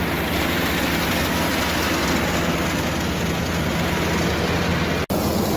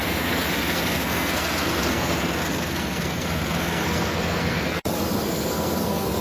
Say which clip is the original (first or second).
first